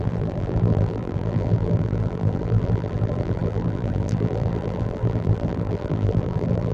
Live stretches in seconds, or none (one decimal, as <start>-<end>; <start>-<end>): none